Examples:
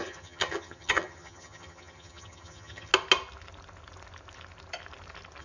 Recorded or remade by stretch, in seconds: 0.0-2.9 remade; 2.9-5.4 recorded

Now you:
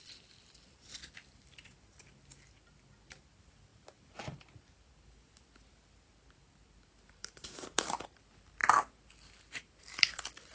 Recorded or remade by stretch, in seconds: 0.0-7.2 recorded; 7.2-8.2 remade; 8.2-10.5 recorded